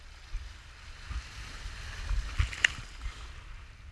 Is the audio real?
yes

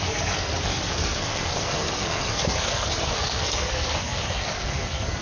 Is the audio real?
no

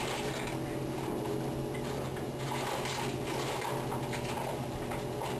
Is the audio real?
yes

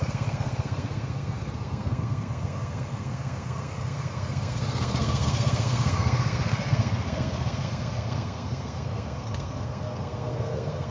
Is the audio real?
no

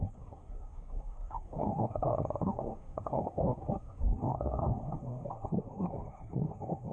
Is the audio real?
no